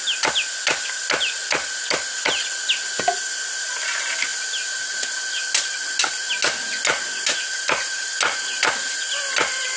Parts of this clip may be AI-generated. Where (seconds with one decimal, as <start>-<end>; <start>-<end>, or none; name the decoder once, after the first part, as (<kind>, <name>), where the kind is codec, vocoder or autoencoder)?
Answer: none